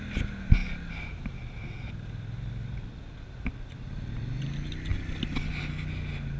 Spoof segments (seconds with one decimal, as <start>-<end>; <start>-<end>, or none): none